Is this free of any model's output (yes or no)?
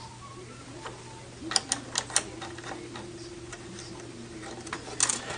yes